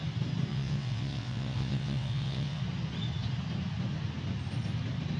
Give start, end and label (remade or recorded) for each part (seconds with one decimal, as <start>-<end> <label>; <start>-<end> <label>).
0.0-0.5 recorded; 0.5-2.6 remade; 2.6-5.2 recorded